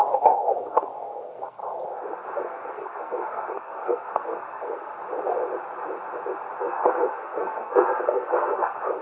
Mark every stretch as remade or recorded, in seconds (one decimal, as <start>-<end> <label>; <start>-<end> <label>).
0.0-1.6 remade; 1.6-2.4 recorded; 2.4-4.9 remade; 4.9-6.6 recorded; 6.6-9.0 remade